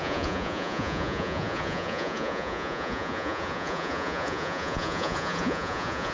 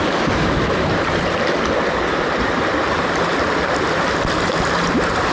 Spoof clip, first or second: first